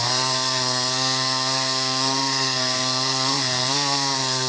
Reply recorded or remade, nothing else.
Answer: remade